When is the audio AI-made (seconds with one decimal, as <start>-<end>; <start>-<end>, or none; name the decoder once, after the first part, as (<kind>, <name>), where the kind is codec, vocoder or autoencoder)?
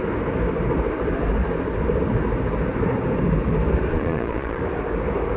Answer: 3.9-4.6 (vocoder, Vocos)